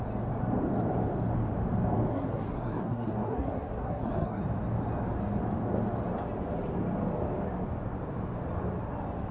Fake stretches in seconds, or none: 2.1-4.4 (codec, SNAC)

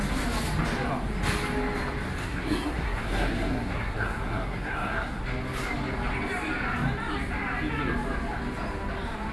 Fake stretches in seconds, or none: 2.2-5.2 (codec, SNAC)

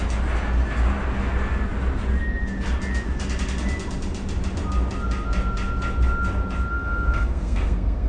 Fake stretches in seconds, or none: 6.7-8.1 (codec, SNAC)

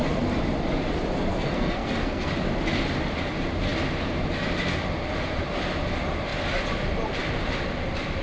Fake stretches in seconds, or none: 1.3-2.3 (codec, SNAC)

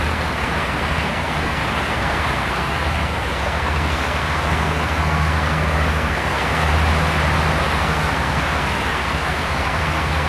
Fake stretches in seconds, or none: 0.0-6.7 (codec, SNAC); 7.6-10.3

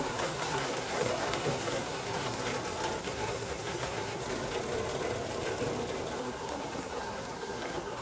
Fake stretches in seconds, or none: 0.0-2.5 (codec, SNAC); 3.0-4.2; 6.2-8.0

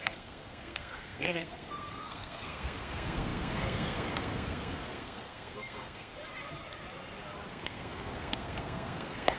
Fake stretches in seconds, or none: 0.0-6.1 (codec, SNAC); 7.5-9.4

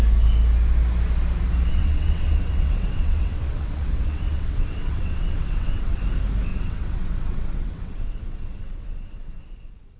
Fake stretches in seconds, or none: 1.7-6.0 (vocoder, WaveNeXt); 6.5-10.0